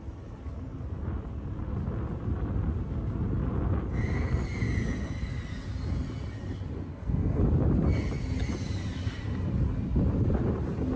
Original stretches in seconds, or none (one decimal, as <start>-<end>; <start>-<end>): 0.0-6.9; 7.4-11.0